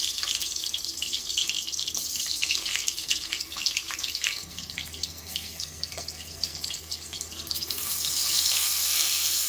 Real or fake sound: fake